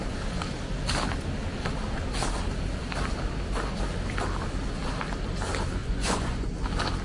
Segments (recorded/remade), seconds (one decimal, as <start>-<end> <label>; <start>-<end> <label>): 0.0-5.8 recorded; 5.8-6.5 remade; 6.5-7.0 recorded